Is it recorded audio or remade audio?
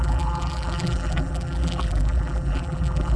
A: remade